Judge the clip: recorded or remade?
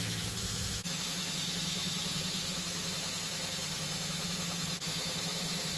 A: remade